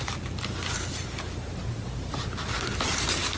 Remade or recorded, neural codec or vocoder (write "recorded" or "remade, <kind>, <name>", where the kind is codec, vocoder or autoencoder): recorded